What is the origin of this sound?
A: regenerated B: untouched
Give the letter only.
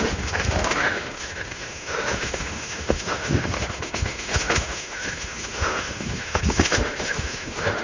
A